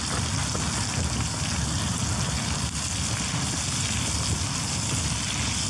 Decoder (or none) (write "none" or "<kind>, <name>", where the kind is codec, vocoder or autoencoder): none